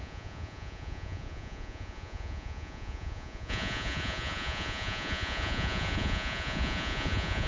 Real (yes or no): no